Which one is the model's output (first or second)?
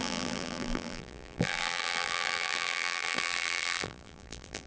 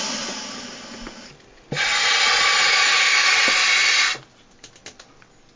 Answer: first